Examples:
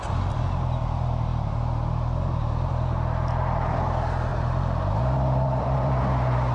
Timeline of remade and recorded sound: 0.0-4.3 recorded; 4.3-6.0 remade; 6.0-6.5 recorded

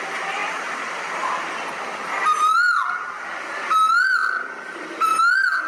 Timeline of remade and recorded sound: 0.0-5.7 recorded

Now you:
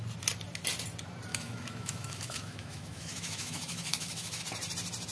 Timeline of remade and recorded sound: 0.0-1.3 recorded; 1.3-4.4 remade; 4.4-5.1 recorded